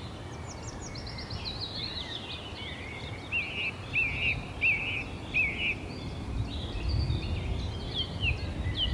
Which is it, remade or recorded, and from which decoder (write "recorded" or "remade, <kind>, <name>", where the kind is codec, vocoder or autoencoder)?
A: recorded